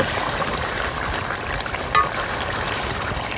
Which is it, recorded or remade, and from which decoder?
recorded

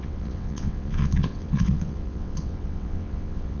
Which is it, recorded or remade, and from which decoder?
remade, vocoder, WaveNeXt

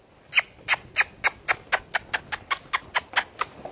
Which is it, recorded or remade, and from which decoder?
recorded